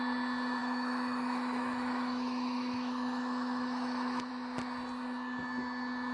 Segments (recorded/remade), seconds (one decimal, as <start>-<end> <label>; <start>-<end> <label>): 0.0-0.6 recorded; 0.6-4.3 remade; 4.3-6.1 recorded